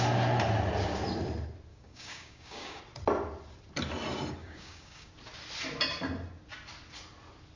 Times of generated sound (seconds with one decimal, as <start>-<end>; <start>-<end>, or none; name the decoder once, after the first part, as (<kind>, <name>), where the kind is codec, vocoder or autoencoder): 1.7-2.8 (codec, DAC); 4.4-5.1